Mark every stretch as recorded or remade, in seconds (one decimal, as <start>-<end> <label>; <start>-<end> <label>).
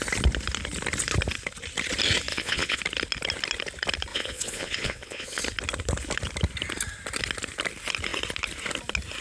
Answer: 0.0-2.3 recorded; 2.3-2.8 remade; 2.8-4.1 recorded; 4.1-5.4 remade; 5.4-9.2 recorded